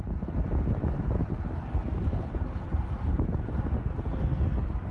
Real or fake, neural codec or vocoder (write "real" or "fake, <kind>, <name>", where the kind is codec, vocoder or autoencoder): real